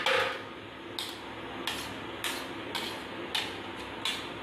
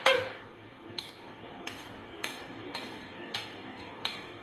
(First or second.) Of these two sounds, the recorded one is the first